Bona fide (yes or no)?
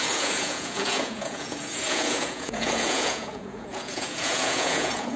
no